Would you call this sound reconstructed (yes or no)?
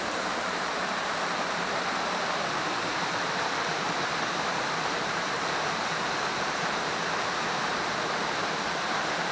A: yes